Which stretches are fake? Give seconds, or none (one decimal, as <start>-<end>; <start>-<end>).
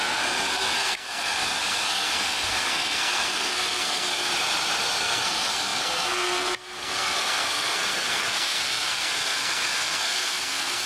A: 0.0-4.3; 5.0-10.9